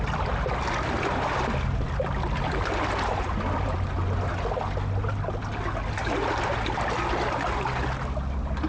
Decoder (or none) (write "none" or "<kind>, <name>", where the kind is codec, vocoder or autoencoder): none